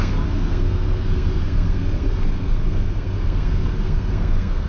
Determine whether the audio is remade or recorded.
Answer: remade